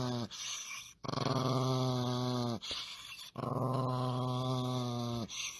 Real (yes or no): yes